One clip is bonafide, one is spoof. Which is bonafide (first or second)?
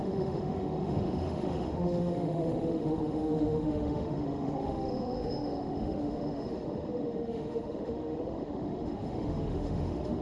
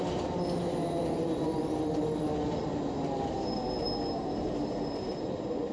second